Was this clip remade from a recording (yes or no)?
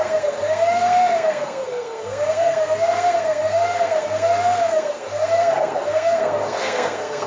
yes